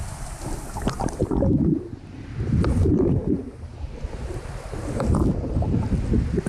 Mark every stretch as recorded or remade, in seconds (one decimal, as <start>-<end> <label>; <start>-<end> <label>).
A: 0.0-3.2 remade; 3.2-3.9 recorded; 3.9-6.5 remade